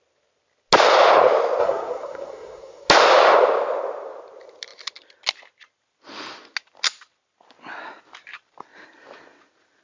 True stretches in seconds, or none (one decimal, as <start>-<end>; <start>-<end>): 0.0-1.6; 2.9-9.8